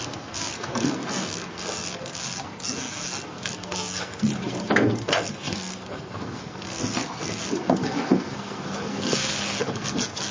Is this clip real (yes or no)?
no